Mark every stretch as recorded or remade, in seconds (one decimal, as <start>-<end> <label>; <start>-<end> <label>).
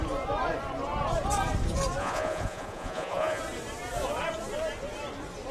0.0-2.0 recorded; 2.0-3.4 remade; 3.4-5.5 recorded